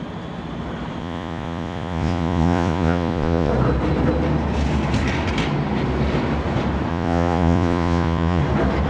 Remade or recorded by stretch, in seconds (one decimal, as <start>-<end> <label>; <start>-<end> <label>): 0.0-1.0 recorded; 1.0-3.5 remade; 3.5-6.9 recorded; 6.9-8.4 remade; 8.4-8.9 recorded